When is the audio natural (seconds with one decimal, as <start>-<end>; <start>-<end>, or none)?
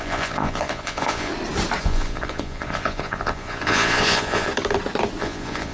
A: 1.3-1.8; 4.5-5.2